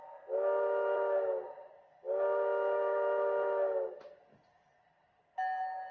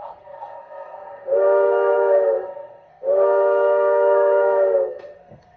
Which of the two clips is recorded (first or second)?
first